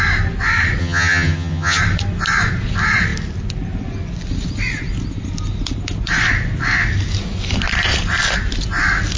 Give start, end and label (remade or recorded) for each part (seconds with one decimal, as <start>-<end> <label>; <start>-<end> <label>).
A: 0.0-0.8 recorded; 0.8-1.8 remade; 1.8-9.2 recorded